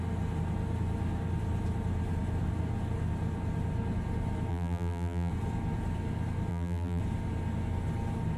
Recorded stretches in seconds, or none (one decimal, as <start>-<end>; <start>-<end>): 0.0-4.5; 5.3-6.5; 7.0-8.4